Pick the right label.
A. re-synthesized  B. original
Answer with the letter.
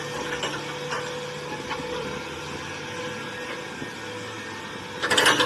B